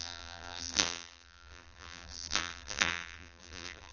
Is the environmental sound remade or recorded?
remade